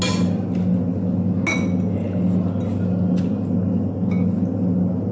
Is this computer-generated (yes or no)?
no